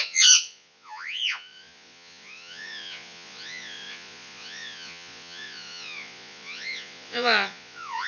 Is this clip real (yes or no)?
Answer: no